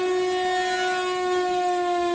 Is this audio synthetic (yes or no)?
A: no